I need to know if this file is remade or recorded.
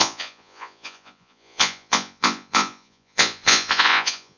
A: remade